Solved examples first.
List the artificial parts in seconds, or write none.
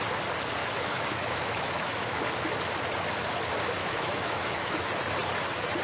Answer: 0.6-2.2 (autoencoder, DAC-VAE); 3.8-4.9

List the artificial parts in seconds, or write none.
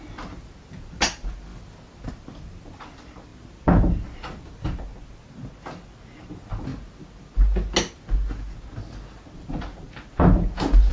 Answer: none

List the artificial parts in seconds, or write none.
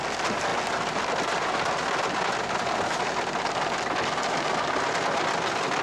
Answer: none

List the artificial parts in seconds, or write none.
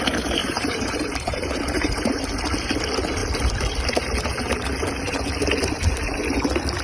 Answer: 0.4-2.3 (vocoder, BigVGAN v2)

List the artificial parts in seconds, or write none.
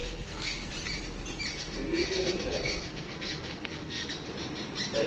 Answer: 0.0-0.7 (codec, SNAC); 1.5-4.1